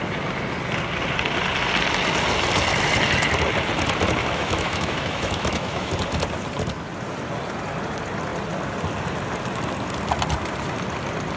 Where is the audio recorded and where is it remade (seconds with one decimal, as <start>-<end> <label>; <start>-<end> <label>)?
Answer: 0.0-4.2 recorded; 4.2-5.9 remade; 5.9-11.4 recorded